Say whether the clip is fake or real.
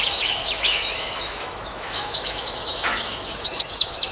fake